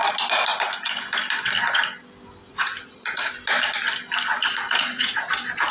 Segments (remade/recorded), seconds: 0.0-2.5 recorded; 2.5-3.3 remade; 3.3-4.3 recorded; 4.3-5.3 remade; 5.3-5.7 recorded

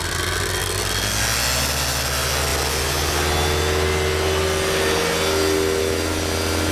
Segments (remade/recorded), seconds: 0.0-6.7 recorded

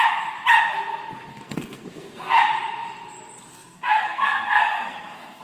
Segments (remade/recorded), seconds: 0.0-1.3 recorded; 1.3-2.4 remade; 2.4-3.5 recorded; 3.5-5.4 remade

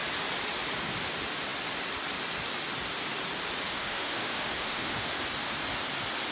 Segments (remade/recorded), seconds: 0.0-3.7 recorded; 3.7-5.1 remade; 5.1-6.3 recorded

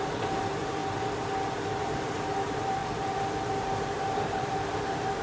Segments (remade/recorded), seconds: 0.0-0.8 remade; 0.8-1.8 recorded; 1.8-5.2 remade

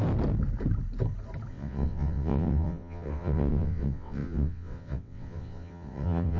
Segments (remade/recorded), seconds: 0.0-1.5 recorded; 1.5-6.4 remade